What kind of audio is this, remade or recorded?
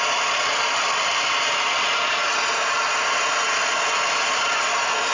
recorded